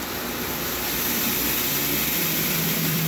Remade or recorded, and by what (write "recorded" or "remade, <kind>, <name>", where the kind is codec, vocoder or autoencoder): remade, vocoder, BigVGAN v2